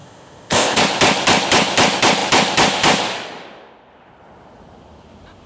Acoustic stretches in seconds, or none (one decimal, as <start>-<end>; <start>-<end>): 0.8-5.5

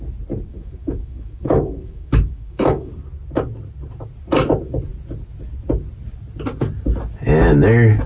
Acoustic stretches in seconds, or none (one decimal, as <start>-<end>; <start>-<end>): 0.0-0.5; 2.9-8.1

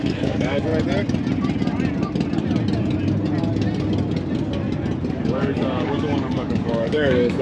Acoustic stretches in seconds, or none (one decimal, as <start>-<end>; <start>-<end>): 0.7-5.1

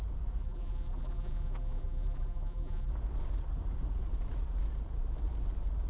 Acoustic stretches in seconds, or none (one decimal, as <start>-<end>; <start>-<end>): 0.0-0.4; 2.9-5.9

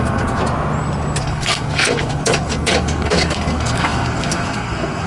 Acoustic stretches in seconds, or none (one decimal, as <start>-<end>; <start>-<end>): 0.4-1.2

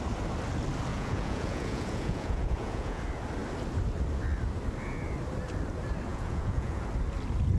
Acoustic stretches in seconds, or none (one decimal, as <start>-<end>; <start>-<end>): 0.0-0.9; 3.0-6.1; 6.8-7.6